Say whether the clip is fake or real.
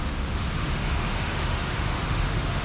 fake